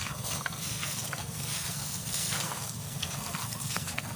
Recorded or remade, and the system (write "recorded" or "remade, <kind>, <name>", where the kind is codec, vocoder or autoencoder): remade, codec, SNAC